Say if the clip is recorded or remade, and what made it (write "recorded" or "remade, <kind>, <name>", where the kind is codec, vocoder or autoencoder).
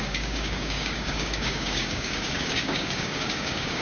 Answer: remade, codec, DAC